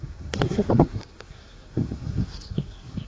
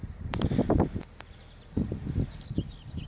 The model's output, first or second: first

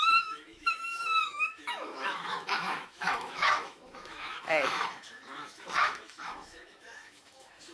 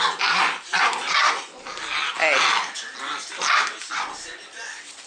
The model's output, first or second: first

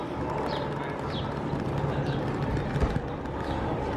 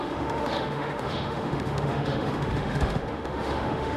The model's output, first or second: second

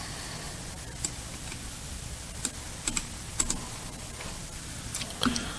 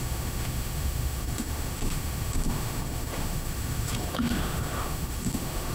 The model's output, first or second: second